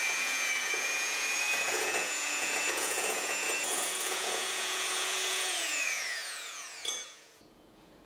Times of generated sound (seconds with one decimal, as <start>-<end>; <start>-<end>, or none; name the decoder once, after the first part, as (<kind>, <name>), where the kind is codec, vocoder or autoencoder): 0.0-8.1 (vocoder, Vocos)